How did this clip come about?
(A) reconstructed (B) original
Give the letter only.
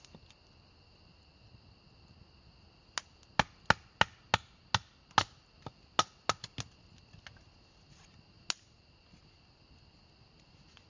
B